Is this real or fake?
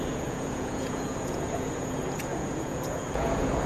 fake